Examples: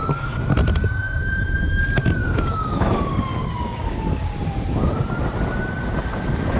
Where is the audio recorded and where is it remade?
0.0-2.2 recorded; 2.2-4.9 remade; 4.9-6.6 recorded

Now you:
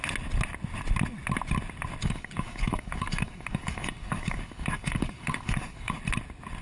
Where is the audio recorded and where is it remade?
0.0-2.0 recorded; 2.0-6.0 remade; 6.0-6.6 recorded

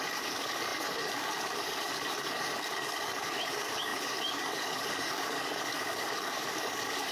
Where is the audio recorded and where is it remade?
0.0-7.1 remade

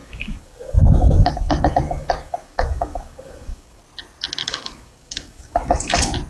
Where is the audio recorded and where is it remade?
0.0-3.8 remade; 3.8-4.4 recorded; 4.4-5.8 remade; 5.8-6.3 recorded

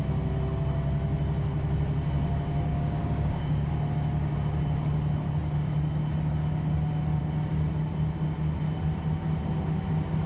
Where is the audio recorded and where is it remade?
0.0-2.7 recorded; 2.7-3.7 remade; 3.7-10.3 recorded

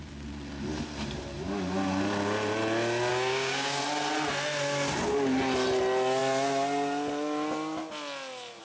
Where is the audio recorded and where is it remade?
0.0-3.1 recorded; 3.1-3.8 remade; 3.8-8.6 recorded